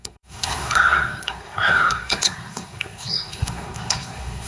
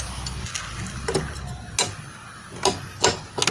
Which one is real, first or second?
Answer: second